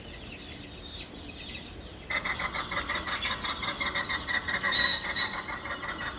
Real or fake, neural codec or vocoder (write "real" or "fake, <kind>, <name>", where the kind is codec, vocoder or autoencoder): real